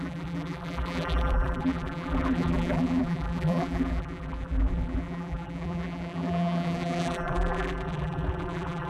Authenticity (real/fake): fake